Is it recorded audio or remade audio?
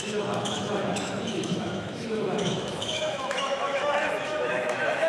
remade